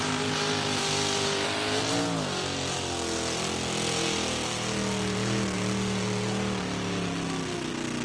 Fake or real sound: real